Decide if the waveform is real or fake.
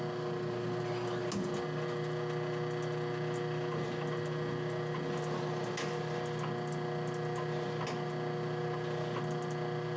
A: real